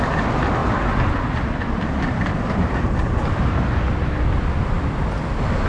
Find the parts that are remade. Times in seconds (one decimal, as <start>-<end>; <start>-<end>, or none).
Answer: 0.0-5.7